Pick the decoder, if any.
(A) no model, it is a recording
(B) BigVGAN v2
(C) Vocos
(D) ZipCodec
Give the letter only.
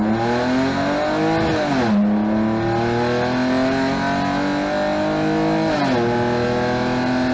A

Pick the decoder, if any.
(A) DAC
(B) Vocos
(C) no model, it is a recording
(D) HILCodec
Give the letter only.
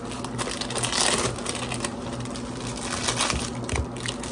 C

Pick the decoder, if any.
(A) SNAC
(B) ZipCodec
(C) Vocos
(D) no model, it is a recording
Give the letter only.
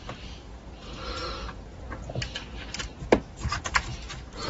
D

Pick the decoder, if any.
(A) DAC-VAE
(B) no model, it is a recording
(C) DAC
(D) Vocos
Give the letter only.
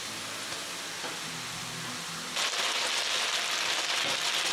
B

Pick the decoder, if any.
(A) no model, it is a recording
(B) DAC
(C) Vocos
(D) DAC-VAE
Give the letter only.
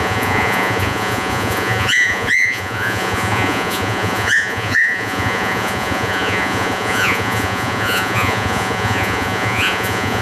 C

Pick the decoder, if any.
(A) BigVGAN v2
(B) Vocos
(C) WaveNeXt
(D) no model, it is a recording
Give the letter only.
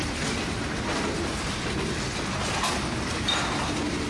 D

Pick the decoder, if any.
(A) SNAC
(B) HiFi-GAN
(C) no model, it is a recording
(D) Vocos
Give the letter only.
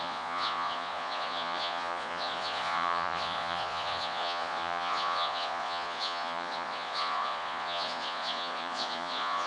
D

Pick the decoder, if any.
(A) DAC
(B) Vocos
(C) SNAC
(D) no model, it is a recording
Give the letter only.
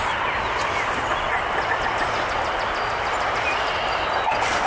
D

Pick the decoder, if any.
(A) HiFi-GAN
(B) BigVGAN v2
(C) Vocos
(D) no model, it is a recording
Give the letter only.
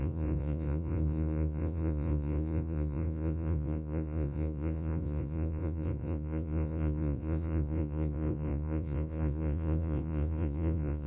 C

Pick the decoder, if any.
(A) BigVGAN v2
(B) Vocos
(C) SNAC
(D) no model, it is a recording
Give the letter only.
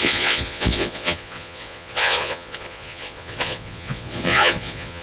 B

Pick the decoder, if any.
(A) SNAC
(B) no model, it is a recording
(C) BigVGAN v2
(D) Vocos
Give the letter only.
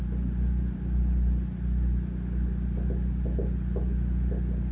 B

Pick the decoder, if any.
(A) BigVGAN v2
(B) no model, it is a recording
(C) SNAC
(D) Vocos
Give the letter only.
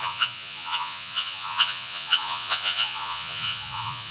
D